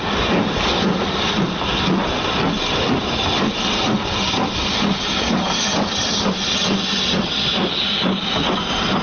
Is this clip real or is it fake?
real